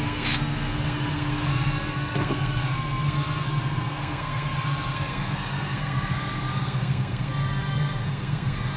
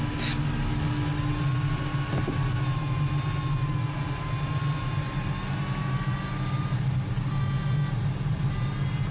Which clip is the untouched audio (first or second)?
second